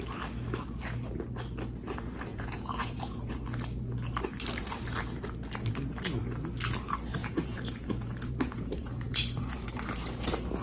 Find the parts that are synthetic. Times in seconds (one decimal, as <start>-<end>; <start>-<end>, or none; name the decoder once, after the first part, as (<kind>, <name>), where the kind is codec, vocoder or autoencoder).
2.3-3.3 (vocoder, Vocos); 7.2-9.7

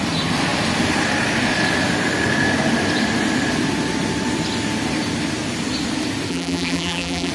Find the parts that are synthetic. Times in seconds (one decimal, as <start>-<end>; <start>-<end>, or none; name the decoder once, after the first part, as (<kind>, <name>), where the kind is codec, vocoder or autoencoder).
6.3-7.3 (vocoder, BigVGAN v2)